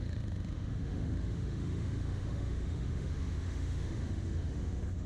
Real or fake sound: fake